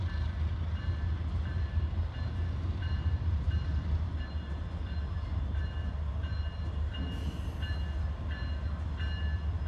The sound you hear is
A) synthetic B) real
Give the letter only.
B